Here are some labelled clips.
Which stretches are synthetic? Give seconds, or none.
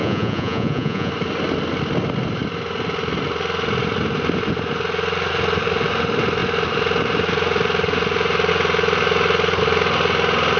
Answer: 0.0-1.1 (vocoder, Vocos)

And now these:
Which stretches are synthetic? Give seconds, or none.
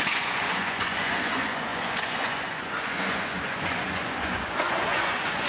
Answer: 0.0-5.5 (vocoder, Vocos)